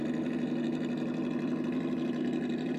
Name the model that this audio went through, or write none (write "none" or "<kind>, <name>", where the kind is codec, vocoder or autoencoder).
none